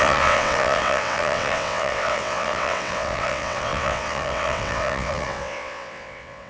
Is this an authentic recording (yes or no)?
no